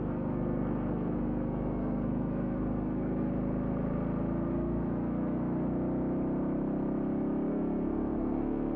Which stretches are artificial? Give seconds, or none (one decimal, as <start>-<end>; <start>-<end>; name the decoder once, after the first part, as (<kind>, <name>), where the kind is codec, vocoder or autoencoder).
0.0-3.3 (codec, SNAC); 4.5-5.7; 7.5-8.8